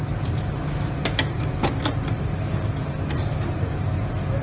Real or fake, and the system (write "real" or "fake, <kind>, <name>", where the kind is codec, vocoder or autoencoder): real